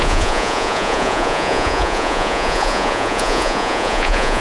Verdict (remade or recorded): remade